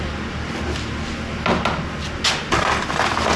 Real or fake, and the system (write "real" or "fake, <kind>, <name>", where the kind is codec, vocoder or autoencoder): real